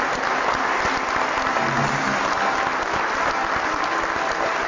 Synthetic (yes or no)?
no